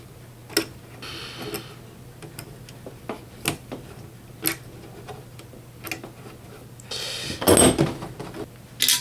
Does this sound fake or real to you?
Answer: real